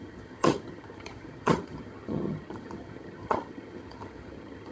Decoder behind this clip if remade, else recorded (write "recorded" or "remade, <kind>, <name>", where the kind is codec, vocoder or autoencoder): remade, vocoder, HiFi-GAN